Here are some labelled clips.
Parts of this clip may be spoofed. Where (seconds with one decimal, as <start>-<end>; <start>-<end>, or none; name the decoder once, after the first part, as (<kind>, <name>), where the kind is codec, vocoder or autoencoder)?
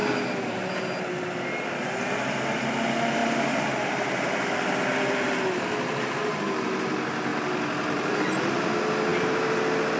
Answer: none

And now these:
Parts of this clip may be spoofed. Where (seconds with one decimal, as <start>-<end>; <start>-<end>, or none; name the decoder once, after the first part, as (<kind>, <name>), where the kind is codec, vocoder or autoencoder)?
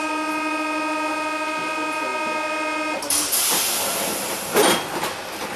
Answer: none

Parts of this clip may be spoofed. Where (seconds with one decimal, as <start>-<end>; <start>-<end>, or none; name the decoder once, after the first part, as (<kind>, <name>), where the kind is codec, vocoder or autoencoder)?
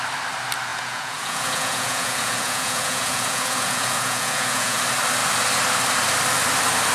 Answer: 0.7-4.8 (vocoder, Vocos)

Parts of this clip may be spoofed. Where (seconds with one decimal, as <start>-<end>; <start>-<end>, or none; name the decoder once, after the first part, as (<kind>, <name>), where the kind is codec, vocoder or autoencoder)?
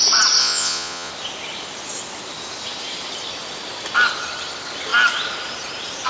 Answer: 0.4-1.1 (vocoder, Vocos)